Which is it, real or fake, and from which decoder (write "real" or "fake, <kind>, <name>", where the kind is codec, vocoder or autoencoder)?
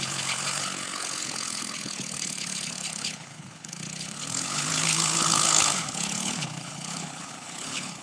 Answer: fake, codec, HILCodec